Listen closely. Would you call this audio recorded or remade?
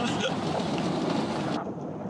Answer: recorded